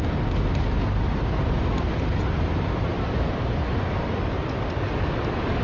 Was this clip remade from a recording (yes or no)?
no